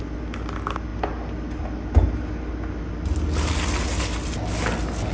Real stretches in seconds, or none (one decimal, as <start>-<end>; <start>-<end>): 0.0-5.1